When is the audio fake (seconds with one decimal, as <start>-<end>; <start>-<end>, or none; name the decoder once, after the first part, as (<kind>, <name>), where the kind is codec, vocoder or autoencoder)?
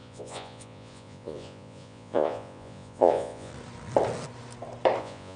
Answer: 0.0-3.5 (vocoder, Vocos); 5.0-5.4